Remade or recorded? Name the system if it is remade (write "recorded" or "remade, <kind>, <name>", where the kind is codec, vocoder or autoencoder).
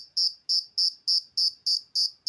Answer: recorded